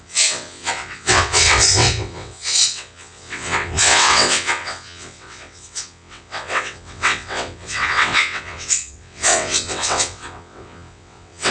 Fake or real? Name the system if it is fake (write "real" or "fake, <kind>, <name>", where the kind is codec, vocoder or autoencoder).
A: fake, vocoder, WaveNeXt